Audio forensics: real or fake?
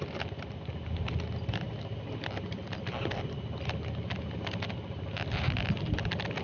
real